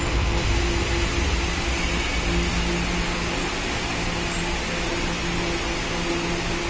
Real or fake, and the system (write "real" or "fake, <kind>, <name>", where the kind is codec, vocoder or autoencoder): real